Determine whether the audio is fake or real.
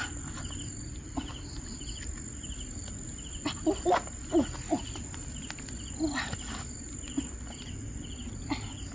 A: real